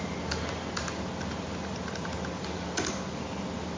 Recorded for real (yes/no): yes